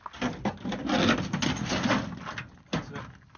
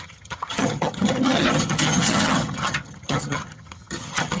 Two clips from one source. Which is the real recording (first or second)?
first